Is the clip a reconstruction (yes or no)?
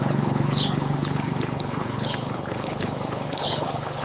yes